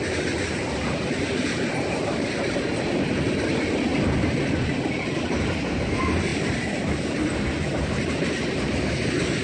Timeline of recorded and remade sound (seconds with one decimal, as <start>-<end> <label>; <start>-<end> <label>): 0.0-9.4 recorded